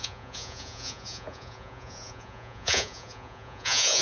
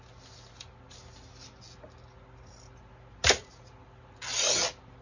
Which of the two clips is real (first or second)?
second